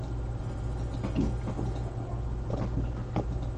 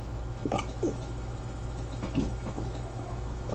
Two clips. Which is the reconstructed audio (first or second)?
second